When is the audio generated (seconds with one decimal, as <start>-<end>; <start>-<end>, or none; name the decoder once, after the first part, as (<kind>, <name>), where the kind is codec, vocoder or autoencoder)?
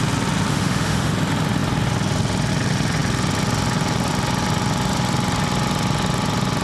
0.5-1.1 (autoencoder, DAC-VAE)